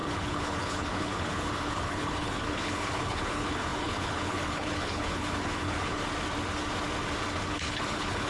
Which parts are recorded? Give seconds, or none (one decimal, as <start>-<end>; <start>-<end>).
6.0-7.5

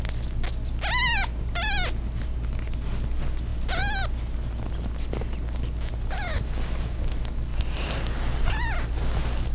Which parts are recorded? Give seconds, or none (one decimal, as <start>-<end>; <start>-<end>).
0.0-9.5

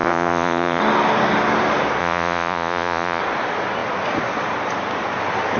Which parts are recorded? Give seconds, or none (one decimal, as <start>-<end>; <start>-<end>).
0.8-2.0; 3.2-5.6

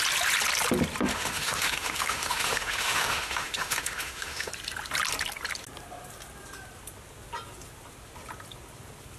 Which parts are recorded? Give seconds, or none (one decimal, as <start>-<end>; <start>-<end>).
0.0-1.1; 4.5-9.2

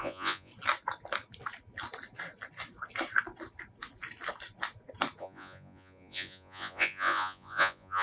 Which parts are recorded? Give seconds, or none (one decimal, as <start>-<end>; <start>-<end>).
0.5-5.2